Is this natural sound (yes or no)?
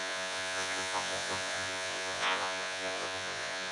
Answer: no